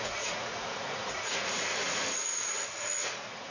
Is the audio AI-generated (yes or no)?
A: yes